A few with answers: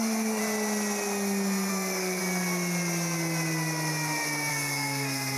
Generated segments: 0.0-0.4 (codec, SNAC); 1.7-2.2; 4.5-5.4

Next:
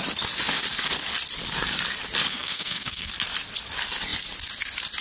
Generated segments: 2.3-3.1 (codec, SNAC)

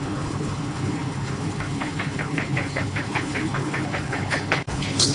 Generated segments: 0.0-5.1 (codec, HILCodec)

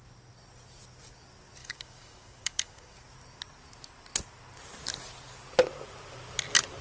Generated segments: 1.6-3.0 (codec, DAC)

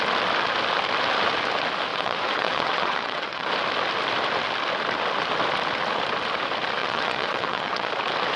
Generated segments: 1.9-3.5 (vocoder, WaveNeXt); 6.8-7.9